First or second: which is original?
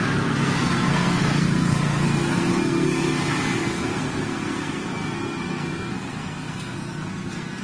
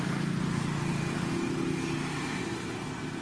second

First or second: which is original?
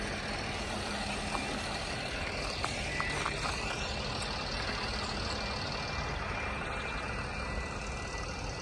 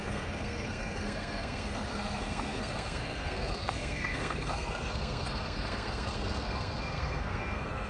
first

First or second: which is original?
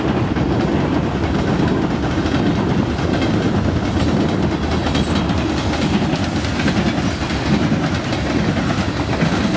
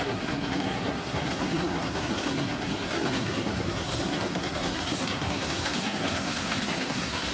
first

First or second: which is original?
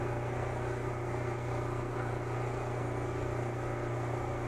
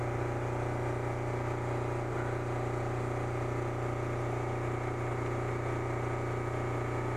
second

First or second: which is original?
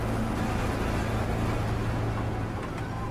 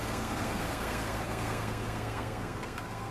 first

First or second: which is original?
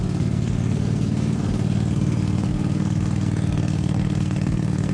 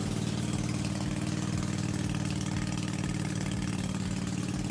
second